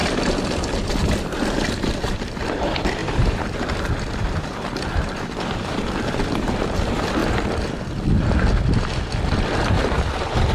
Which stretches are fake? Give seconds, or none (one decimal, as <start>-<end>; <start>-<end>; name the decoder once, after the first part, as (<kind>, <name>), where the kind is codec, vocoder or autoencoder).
0.9-7.2 (vocoder, BigVGAN v2); 9.0-10.5